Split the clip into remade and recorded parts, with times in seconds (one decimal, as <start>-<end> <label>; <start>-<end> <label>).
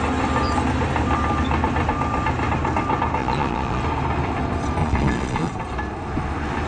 0.0-3.2 recorded; 3.2-3.8 remade; 3.8-4.8 recorded; 4.8-5.5 remade; 5.5-6.7 recorded